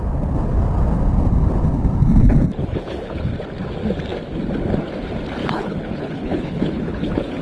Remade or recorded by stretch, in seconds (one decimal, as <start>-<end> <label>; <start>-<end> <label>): 0.0-2.6 recorded; 2.6-3.3 remade; 3.3-5.4 recorded; 5.4-7.4 remade

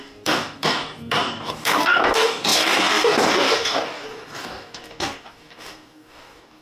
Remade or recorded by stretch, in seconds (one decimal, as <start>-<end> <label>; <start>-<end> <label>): 0.0-6.6 remade

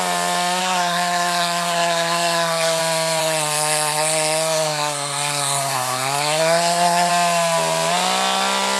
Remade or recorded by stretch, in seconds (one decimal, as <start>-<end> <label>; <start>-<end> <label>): 0.0-0.6 recorded; 0.6-2.8 remade; 2.8-3.2 recorded; 3.2-7.1 remade; 7.1-8.8 recorded

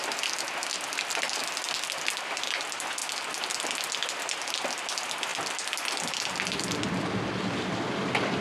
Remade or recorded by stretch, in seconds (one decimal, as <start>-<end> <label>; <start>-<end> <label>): 0.0-8.4 recorded